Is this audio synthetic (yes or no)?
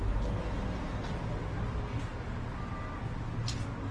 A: no